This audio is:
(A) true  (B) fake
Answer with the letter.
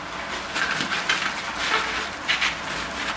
A